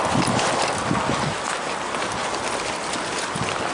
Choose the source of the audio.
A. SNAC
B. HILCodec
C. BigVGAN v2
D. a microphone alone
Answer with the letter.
D